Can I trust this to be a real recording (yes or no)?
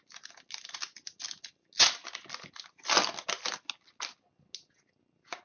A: yes